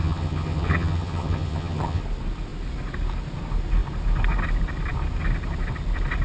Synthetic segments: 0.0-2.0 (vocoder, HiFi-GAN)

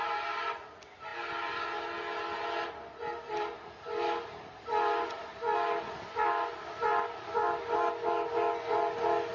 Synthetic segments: none

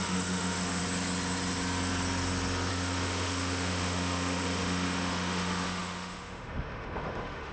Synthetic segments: 0.0-0.8 (autoencoder, DAC-VAE); 2.7-7.5

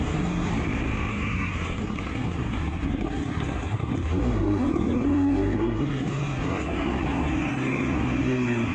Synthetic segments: 0.0-0.5 (codec, SNAC); 1.1-8.7

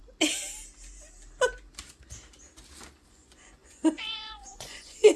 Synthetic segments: 3.1-5.2 (vocoder, Vocos)

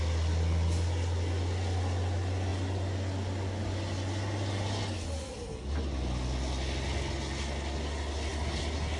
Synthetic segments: none